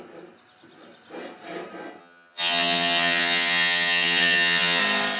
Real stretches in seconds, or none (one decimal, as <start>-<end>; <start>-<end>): 0.0-2.0; 4.8-5.2